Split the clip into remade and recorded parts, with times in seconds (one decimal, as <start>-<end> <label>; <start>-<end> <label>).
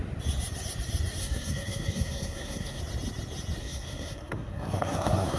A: 0.0-1.2 recorded; 1.2-2.8 remade; 2.8-3.6 recorded; 3.6-5.4 remade